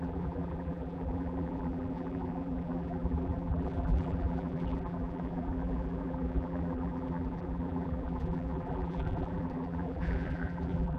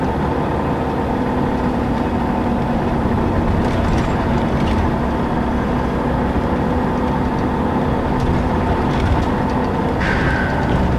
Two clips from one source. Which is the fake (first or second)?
first